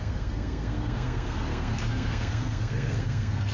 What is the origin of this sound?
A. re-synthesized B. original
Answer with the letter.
A